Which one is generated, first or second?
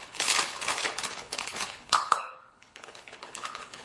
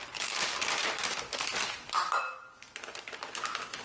first